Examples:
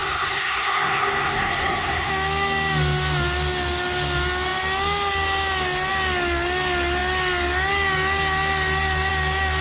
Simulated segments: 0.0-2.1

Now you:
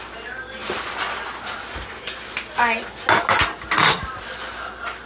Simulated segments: none

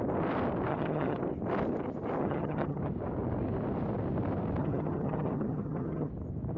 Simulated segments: 0.7-1.2; 2.2-2.8; 4.6-6.1

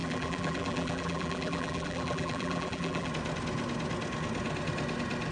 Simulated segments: 0.0-3.1

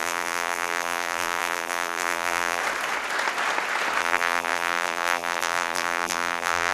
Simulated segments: 0.0-2.6; 4.0-6.7